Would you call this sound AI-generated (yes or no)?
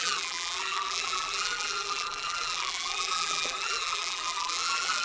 yes